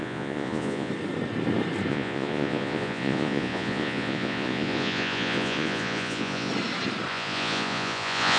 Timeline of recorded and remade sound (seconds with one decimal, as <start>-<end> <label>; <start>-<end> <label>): 0.0-0.9 remade; 0.9-1.9 recorded; 1.9-6.5 remade; 6.5-7.1 recorded; 7.1-8.4 remade